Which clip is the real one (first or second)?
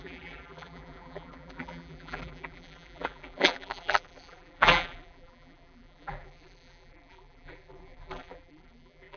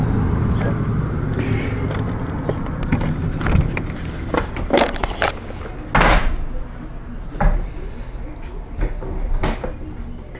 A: second